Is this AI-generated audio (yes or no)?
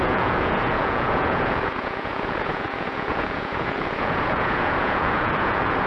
yes